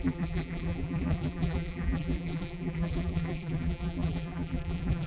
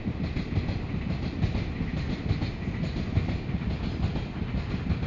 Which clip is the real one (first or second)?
second